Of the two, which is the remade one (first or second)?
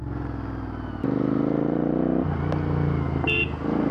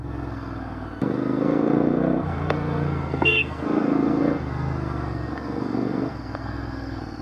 second